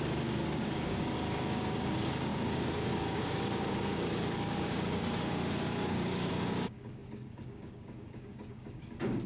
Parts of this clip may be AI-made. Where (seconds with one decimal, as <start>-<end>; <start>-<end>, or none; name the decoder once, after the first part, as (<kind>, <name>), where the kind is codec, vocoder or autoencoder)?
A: 0.0-9.3 (codec, DAC)